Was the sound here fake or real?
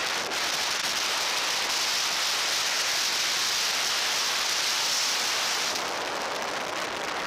real